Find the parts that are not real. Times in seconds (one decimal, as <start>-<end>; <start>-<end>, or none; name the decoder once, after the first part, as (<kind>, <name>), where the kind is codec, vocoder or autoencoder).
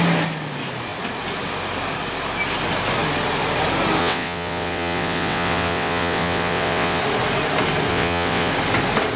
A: 4.0-7.0 (vocoder, WaveNeXt); 7.9-8.5